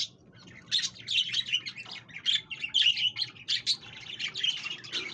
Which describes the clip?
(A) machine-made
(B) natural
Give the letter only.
B